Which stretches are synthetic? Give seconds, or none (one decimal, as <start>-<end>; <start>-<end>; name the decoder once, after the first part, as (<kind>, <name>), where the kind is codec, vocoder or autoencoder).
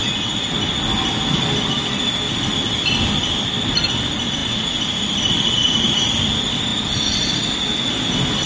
4.4-5.5 (vocoder, BigVGAN v2); 6.7-7.5